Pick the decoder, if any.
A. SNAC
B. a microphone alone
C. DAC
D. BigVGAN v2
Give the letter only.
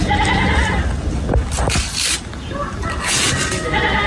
B